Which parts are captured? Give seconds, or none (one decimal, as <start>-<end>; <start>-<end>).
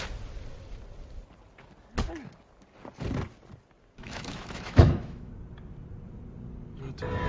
0.0-4.0; 5.3-7.3